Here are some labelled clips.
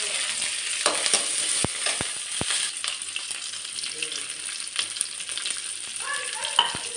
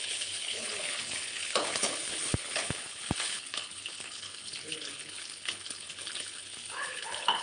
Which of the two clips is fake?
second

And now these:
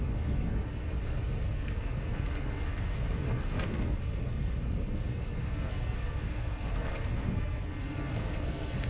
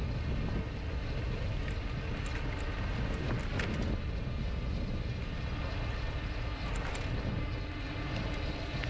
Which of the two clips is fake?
first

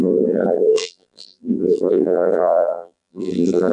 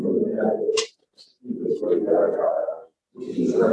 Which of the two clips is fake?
first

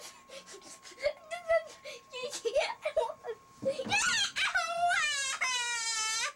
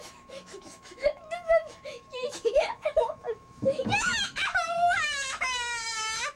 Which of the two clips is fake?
second